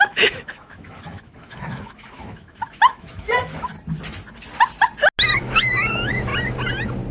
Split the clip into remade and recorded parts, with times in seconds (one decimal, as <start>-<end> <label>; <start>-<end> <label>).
0.0-3.7 remade; 3.7-5.4 recorded; 5.4-6.3 remade; 6.3-7.1 recorded